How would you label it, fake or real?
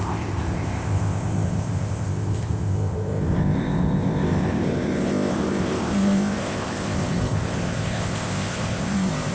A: fake